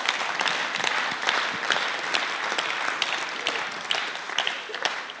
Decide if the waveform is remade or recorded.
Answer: recorded